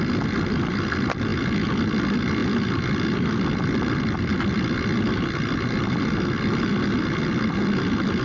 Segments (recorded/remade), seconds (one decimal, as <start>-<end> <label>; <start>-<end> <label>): 0.0-8.2 recorded